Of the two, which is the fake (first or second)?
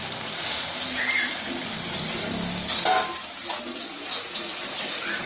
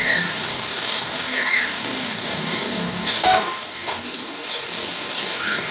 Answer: second